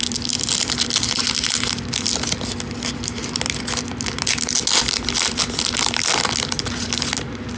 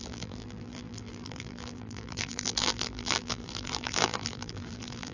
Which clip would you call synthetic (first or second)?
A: second